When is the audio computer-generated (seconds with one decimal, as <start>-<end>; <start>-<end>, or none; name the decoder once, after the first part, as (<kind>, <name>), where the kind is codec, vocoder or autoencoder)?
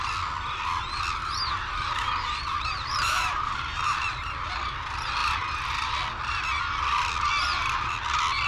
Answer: 1.2-4.5 (vocoder, BigVGAN v2)